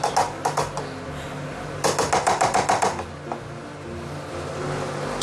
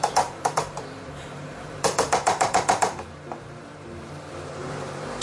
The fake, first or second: second